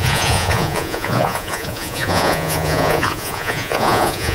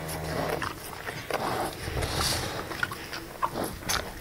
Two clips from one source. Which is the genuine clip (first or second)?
second